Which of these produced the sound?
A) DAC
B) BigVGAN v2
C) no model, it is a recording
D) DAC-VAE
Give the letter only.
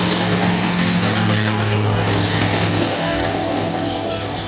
A